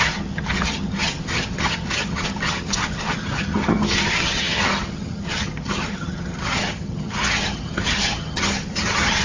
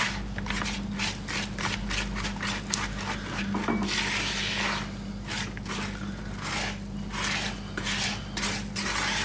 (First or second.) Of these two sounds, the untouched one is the second